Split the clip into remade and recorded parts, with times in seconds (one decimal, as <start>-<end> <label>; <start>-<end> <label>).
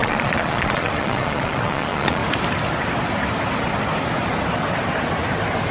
0.0-2.2 remade; 2.2-5.7 recorded